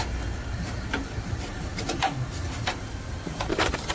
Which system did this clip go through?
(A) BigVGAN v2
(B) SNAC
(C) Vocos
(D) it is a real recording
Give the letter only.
A